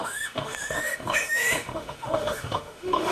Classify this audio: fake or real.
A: fake